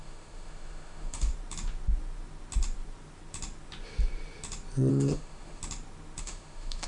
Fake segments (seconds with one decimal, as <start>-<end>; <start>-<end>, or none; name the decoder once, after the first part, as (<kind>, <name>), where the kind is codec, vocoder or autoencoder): 0.0-1.3 (autoencoder, DAC-VAE); 4.9-5.6; 6.2-6.9